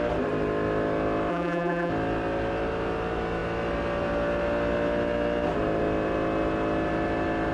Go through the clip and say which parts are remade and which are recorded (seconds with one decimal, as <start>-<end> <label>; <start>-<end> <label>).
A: 0.0-1.3 recorded; 1.3-1.9 remade; 1.9-7.5 recorded